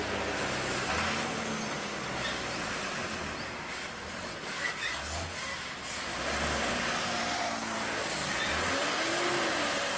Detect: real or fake real